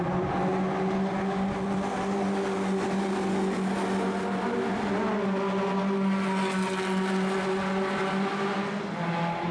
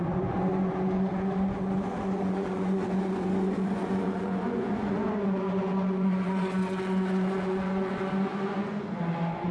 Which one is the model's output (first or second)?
second